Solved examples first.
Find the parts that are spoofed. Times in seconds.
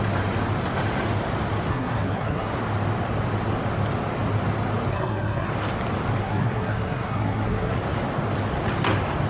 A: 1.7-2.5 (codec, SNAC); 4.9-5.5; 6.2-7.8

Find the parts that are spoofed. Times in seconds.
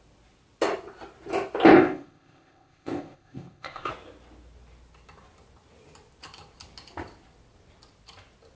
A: 1.7-3.9 (codec, ZipCodec)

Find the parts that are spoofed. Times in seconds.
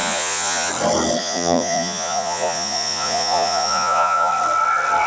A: 0.0-0.7 (vocoder, Vocos); 1.2-4.3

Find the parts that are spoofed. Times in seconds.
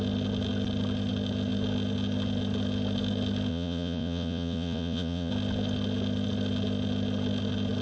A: 3.5-5.3 (vocoder, Vocos)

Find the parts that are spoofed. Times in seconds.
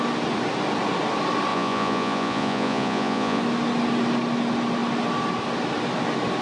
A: 1.5-3.4 (vocoder, Vocos)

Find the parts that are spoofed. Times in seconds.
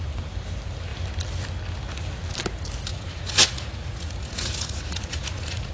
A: 2.9-5.7 (vocoder, Vocos)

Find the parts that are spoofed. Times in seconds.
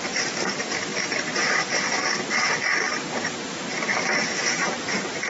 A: 0.0-5.3 (vocoder, BigVGAN v2)